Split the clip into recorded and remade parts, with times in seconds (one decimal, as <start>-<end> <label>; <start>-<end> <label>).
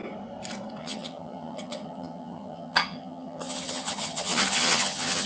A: 0.0-0.8 recorded; 0.8-5.3 remade